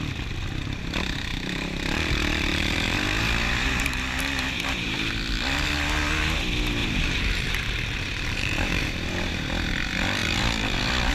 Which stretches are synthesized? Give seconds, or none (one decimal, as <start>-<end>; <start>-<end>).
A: 1.3-2.1; 2.5-5.1; 6.8-9.3